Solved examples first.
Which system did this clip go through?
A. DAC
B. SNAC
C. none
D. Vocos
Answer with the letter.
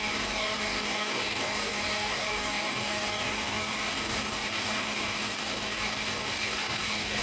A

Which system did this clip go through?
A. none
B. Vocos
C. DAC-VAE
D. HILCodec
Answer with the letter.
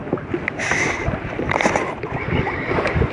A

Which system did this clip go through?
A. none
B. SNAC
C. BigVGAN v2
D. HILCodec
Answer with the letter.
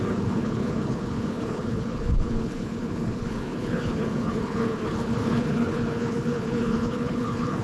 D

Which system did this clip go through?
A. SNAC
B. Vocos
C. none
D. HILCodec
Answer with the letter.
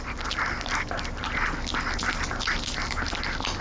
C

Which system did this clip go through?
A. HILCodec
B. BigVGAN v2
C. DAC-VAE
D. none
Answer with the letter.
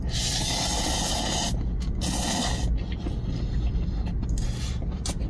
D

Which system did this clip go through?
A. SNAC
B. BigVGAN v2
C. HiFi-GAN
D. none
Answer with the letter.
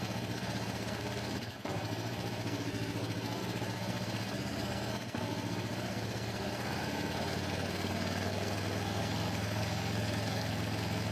A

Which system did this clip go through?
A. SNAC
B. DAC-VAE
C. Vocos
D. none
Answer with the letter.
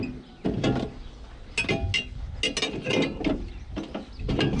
D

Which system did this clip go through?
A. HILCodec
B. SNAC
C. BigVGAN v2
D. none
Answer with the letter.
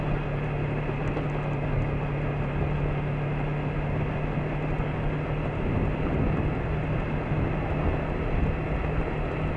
D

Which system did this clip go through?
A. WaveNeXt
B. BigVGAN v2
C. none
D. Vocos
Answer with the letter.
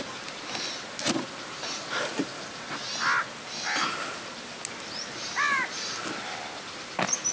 C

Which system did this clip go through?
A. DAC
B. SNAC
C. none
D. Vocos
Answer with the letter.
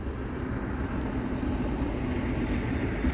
C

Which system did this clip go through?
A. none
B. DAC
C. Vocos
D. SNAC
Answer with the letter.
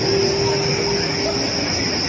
A